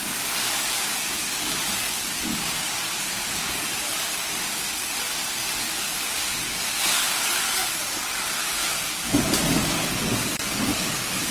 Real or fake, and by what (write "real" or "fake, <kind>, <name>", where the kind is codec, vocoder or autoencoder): fake, codec, DAC